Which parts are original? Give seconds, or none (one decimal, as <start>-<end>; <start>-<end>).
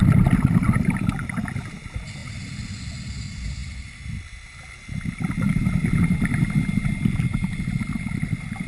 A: 0.0-8.7